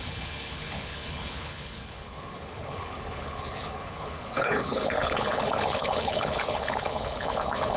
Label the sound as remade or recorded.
remade